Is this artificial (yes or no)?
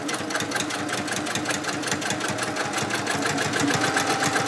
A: no